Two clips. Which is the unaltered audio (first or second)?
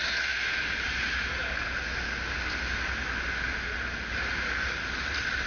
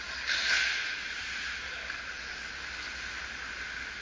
first